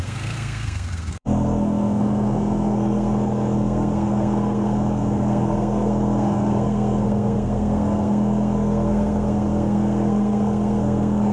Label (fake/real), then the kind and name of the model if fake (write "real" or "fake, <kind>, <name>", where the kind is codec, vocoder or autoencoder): fake, codec, SNAC